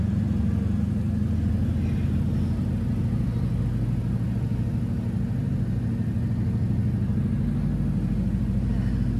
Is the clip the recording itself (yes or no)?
yes